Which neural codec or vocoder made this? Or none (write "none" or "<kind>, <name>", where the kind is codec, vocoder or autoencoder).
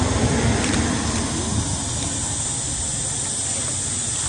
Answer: none